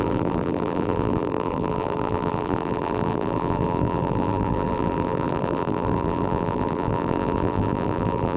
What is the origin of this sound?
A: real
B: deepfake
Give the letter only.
B